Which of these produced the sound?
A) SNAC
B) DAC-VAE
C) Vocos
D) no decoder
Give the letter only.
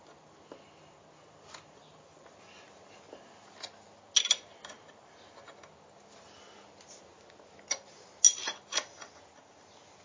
D